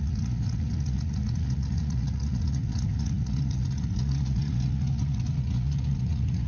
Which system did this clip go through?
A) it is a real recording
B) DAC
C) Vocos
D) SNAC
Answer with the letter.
C